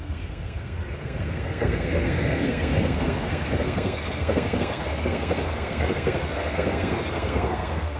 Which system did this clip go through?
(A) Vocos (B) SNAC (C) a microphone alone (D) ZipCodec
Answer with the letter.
B